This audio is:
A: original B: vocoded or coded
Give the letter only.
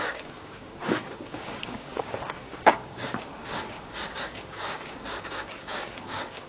B